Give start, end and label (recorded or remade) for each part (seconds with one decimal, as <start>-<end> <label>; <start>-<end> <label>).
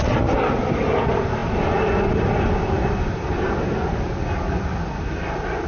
0.0-5.7 recorded